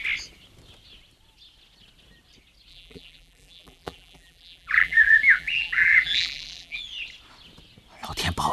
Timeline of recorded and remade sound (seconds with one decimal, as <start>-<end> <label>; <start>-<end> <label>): 0.0-2.7 recorded; 2.7-6.8 remade; 6.8-8.5 recorded